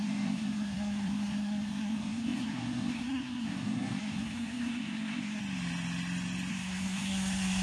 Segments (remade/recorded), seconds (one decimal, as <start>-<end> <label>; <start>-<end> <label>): 0.0-5.4 remade; 5.4-6.5 recorded; 6.5-7.6 remade